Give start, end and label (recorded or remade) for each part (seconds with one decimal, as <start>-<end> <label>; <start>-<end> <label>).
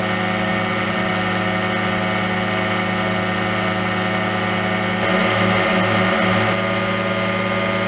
0.0-0.5 recorded; 0.5-1.1 remade; 1.1-7.9 recorded